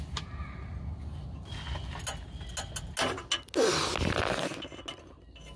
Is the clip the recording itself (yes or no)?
yes